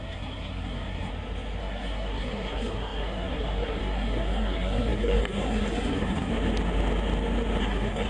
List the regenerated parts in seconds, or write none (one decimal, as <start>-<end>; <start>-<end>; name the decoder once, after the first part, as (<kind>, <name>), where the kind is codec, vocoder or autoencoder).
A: 0.0-1.1 (codec, SNAC); 1.6-6.3; 7.6-8.1